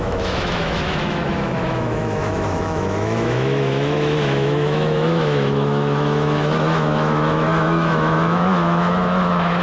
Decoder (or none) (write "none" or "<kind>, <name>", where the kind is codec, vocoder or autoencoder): autoencoder, DAC-VAE